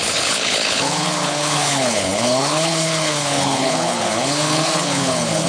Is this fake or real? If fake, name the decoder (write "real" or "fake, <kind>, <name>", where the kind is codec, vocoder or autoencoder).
fake, codec, HILCodec